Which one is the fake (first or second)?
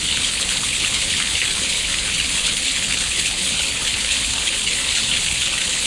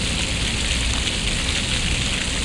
first